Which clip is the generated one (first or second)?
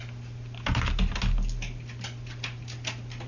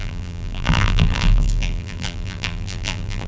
second